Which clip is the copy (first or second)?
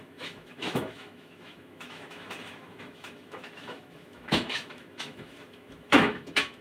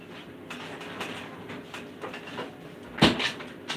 first